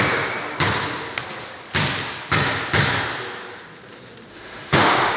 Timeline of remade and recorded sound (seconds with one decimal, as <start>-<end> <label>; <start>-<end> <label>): 0.0-4.3 recorded; 4.3-5.2 remade